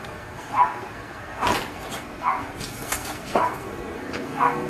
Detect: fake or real fake